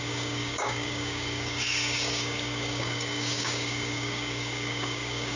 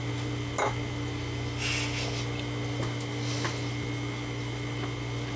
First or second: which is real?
second